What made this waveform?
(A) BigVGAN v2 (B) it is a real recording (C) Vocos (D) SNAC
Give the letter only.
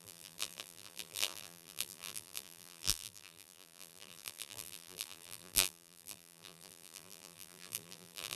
A